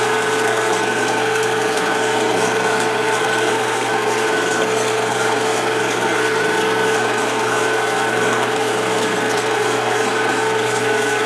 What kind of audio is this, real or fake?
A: fake